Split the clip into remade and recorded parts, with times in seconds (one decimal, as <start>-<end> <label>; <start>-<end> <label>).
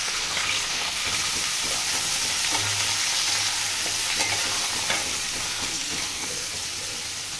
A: 0.0-1.0 remade; 1.0-5.4 recorded; 5.4-6.5 remade; 6.5-7.4 recorded